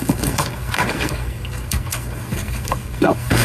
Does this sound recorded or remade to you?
remade